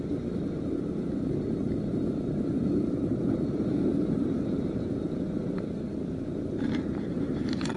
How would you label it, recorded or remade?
remade